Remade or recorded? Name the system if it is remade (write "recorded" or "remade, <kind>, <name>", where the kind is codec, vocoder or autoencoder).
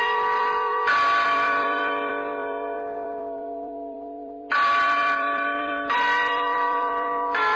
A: remade, vocoder, BigVGAN v2